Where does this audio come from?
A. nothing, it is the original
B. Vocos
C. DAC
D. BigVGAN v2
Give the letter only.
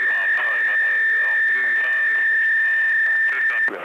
A